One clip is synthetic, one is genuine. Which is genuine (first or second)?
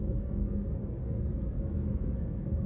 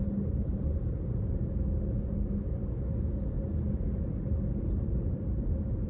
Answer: second